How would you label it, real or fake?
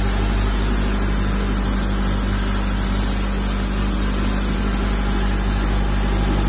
real